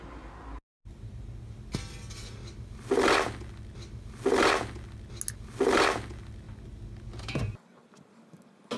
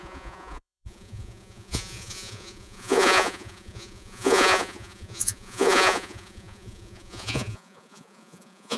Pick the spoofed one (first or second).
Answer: second